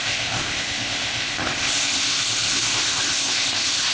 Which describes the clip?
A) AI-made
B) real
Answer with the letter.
A